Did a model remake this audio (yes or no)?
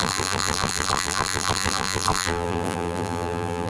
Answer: yes